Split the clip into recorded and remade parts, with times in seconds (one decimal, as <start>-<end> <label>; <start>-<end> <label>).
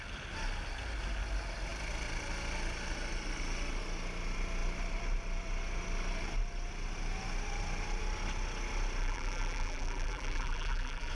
0.0-9.0 recorded; 9.0-11.1 remade